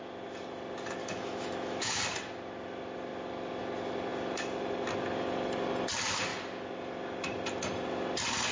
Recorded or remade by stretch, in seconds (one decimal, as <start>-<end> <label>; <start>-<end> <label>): 0.0-1.0 recorded; 1.0-2.0 remade; 2.0-8.5 recorded